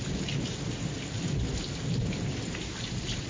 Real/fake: real